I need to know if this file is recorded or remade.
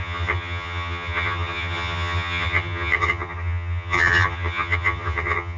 remade